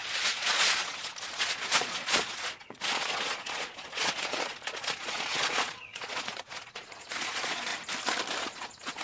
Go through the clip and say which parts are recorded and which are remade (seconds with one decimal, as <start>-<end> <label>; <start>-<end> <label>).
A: 0.0-7.7 remade; 7.7-8.4 recorded; 8.4-9.0 remade